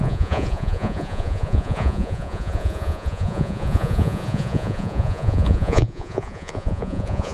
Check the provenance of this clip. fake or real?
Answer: fake